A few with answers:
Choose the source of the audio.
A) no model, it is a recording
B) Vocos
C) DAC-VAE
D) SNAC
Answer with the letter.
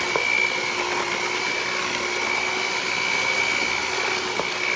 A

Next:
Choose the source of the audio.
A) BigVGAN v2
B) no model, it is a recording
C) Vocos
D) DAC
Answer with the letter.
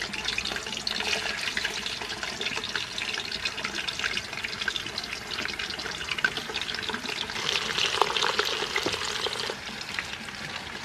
B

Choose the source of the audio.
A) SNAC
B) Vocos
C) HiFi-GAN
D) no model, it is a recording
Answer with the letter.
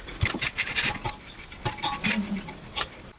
D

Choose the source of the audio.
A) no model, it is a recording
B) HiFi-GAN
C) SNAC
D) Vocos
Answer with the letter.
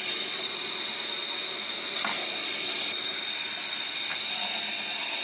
A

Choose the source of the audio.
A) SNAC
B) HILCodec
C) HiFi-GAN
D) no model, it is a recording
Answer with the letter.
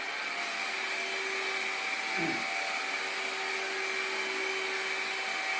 D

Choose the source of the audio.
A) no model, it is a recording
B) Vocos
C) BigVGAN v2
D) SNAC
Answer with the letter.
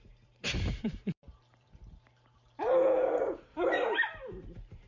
C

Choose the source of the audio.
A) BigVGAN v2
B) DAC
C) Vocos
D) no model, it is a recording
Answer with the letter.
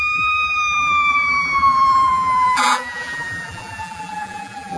A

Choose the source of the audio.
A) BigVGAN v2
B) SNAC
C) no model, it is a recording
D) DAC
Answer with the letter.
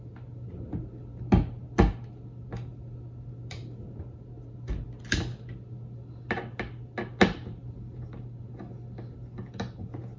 C